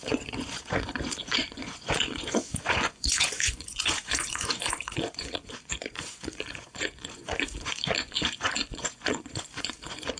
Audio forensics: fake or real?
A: fake